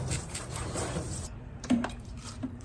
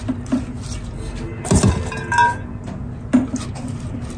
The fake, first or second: first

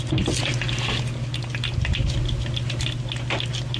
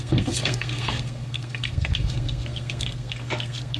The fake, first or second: second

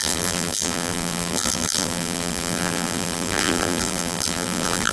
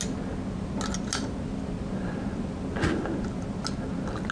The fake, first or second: first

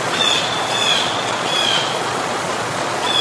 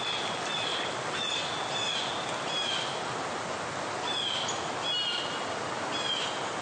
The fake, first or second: first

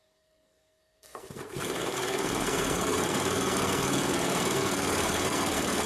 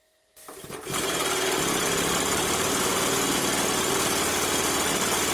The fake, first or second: first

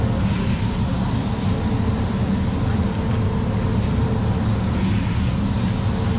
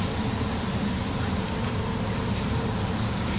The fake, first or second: second